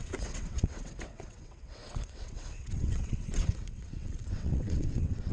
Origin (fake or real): fake